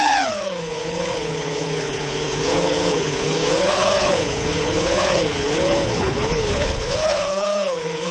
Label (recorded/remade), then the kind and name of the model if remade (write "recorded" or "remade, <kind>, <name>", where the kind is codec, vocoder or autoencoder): remade, codec, HILCodec